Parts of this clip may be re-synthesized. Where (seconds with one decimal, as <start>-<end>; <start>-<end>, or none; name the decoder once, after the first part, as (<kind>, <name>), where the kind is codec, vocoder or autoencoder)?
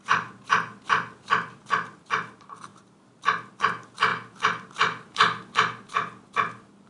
none